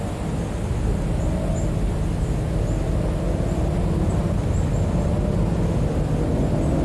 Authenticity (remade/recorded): recorded